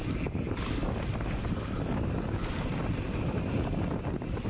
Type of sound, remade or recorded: recorded